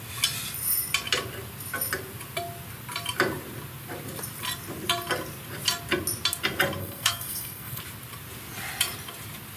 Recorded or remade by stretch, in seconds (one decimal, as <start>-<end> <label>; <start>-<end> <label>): 0.0-6.8 recorded; 6.8-7.8 remade; 7.8-9.6 recorded